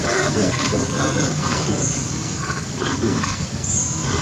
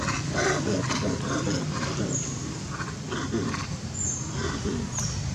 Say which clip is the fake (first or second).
first